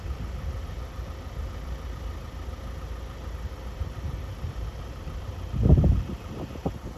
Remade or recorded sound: recorded